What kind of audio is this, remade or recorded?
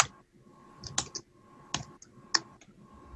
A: recorded